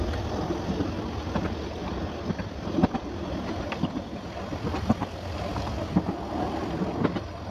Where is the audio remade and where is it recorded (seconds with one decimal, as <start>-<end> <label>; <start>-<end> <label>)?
0.0-7.5 recorded